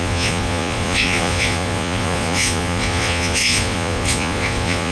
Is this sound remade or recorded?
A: remade